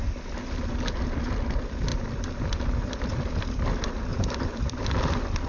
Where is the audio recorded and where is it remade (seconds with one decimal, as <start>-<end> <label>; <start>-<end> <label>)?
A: 0.0-1.9 recorded; 1.9-3.5 remade; 3.5-4.1 recorded; 4.1-4.8 remade; 4.8-5.5 recorded